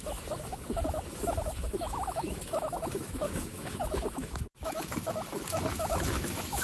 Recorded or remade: remade